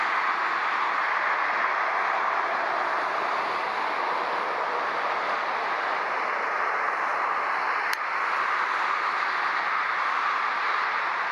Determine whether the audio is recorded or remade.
recorded